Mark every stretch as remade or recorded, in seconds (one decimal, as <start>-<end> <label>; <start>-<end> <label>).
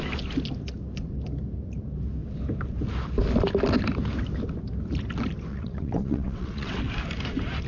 0.0-5.5 recorded; 5.5-6.8 remade; 6.8-7.7 recorded